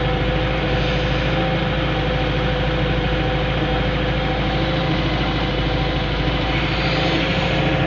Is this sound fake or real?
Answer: real